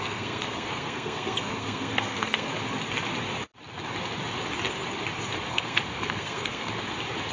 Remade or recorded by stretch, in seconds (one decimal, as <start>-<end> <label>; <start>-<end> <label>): 0.0-2.5 remade; 2.5-5.5 recorded; 5.5-6.7 remade; 6.7-7.3 recorded